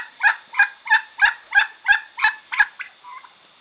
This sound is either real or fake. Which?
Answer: real